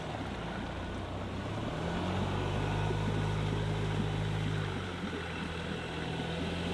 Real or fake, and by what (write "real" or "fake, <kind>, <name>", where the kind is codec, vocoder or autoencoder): real